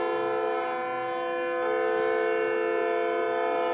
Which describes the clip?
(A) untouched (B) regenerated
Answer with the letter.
A